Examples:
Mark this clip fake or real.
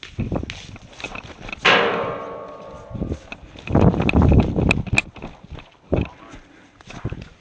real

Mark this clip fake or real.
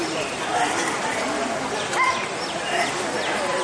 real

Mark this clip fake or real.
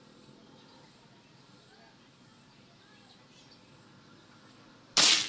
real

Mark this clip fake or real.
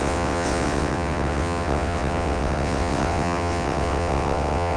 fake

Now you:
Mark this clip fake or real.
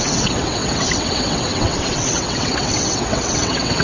fake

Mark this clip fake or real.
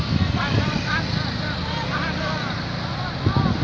real